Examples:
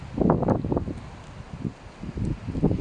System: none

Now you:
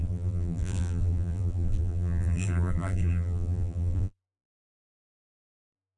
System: vocoder, BigVGAN v2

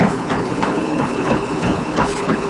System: codec, HILCodec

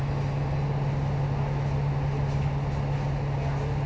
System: none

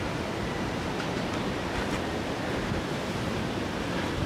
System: none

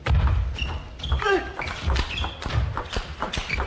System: none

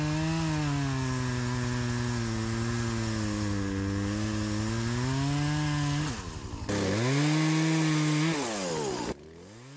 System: none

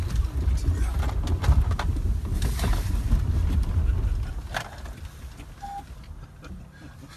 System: none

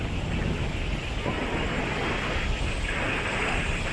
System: none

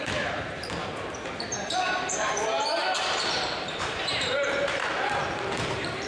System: vocoder, BigVGAN v2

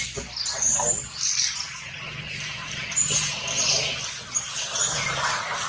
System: none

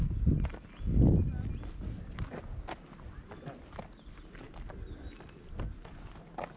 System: none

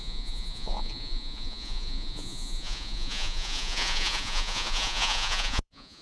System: vocoder, Vocos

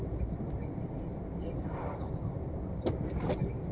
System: none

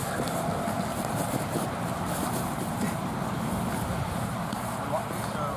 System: none